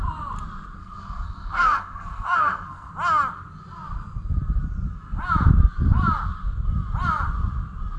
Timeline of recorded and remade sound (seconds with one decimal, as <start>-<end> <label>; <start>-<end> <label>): 0.0-0.8 recorded; 0.8-2.9 remade; 2.9-8.0 recorded

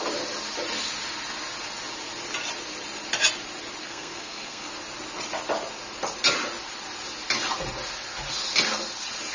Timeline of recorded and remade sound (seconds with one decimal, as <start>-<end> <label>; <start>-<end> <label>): 0.0-3.8 recorded; 3.8-4.7 remade; 4.7-9.3 recorded

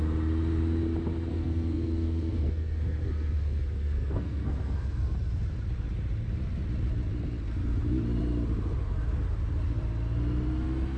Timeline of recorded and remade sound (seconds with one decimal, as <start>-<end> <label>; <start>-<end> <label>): 0.0-1.3 recorded; 1.3-5.0 remade; 5.0-11.0 recorded